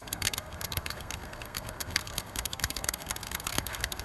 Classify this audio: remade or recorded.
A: remade